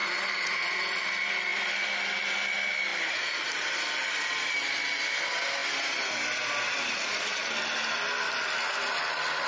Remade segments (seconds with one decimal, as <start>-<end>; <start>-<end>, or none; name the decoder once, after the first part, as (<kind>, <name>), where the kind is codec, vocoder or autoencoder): 0.0-1.0 (vocoder, Vocos)